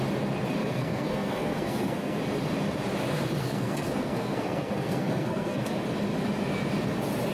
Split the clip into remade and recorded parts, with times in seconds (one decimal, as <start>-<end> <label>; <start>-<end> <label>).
0.0-0.6 recorded; 0.6-2.2 remade; 2.2-3.4 recorded; 3.4-5.8 remade; 5.8-7.3 recorded